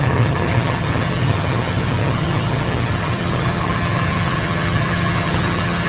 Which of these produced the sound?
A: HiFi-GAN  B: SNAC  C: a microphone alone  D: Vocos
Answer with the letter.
A